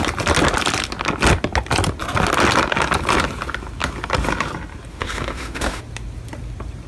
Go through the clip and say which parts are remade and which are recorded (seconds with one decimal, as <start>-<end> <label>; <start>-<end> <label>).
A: 0.0-4.9 recorded; 4.9-5.8 remade; 5.8-6.9 recorded